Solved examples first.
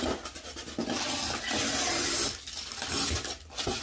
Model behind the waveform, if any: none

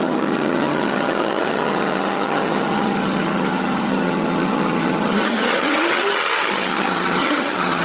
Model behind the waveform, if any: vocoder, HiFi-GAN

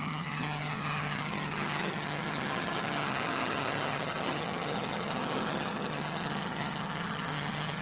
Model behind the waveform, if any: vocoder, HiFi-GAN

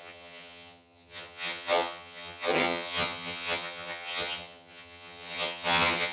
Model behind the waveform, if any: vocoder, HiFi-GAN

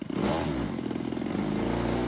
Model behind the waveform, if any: none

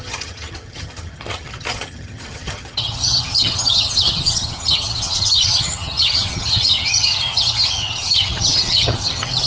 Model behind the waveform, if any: vocoder, HiFi-GAN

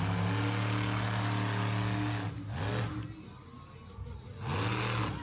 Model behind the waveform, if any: none